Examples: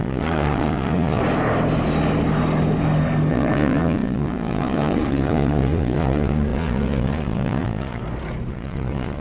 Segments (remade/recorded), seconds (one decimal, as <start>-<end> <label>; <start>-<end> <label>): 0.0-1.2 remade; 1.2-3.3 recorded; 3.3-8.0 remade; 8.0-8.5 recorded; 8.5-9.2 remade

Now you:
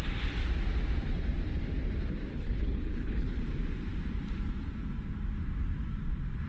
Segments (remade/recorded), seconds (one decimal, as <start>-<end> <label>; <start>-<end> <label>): 0.0-2.3 recorded; 2.3-3.4 remade; 3.4-6.5 recorded

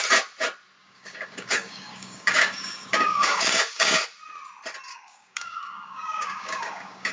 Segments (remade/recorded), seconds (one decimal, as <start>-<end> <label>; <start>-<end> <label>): 0.0-0.8 recorded; 0.8-4.0 remade; 4.0-4.9 recorded; 4.9-7.1 remade